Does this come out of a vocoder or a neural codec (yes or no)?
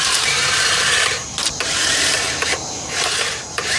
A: yes